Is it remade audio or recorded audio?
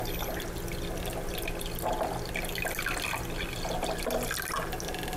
recorded